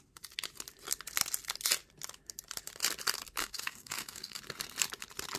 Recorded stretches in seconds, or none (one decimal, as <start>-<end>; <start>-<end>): 0.0-3.4; 4.4-5.4